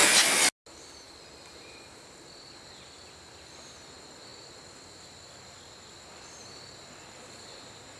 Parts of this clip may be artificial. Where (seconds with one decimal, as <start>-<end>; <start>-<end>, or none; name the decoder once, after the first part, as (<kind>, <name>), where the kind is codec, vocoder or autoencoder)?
none